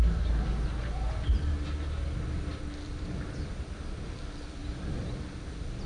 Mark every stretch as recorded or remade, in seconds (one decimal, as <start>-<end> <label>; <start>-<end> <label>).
0.0-2.5 recorded; 2.5-3.8 remade; 3.8-4.6 recorded; 4.6-5.4 remade; 5.4-5.9 recorded